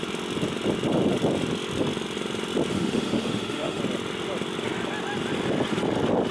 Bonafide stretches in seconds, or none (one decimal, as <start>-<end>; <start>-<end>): 0.0-2.7; 3.8-6.3